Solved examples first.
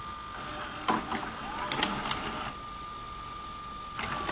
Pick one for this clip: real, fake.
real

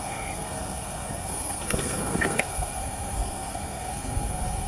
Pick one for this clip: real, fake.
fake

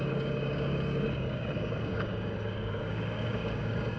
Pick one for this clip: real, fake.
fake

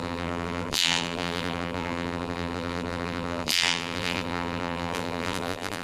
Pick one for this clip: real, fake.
fake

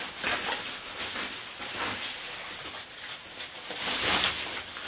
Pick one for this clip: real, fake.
real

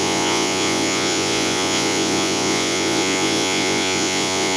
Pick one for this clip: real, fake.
fake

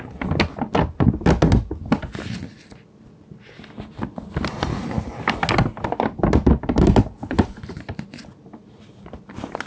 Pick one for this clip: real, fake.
real